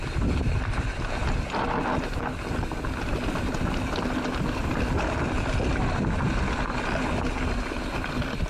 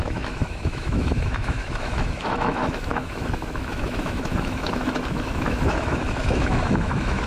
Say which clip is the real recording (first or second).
first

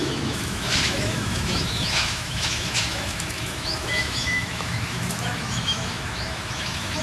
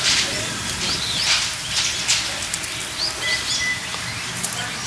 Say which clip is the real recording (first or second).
second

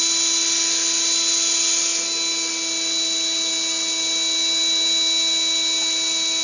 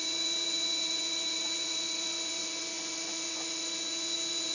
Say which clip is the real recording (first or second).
first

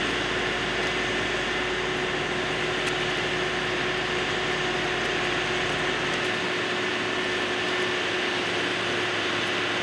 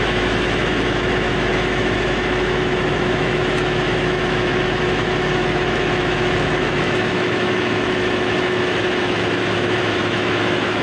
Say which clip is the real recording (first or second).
first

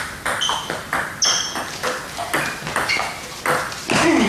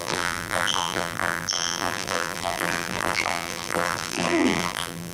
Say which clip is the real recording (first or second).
first